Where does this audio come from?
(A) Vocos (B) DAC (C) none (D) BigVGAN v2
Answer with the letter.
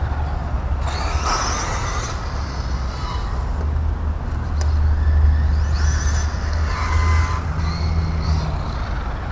C